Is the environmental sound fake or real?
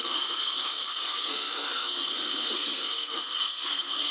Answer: fake